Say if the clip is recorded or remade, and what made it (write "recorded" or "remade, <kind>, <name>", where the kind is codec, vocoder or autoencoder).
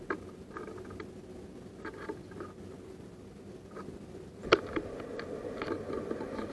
recorded